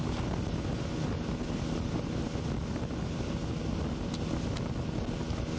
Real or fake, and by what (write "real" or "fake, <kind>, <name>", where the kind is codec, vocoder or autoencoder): real